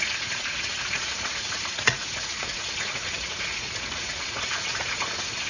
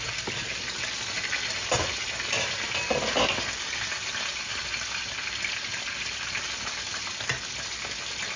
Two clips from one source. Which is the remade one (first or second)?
first